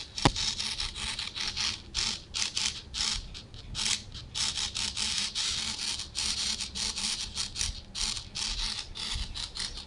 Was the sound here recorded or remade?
recorded